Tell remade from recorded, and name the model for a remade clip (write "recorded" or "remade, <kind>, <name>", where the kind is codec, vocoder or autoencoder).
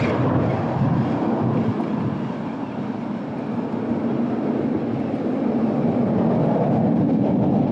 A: recorded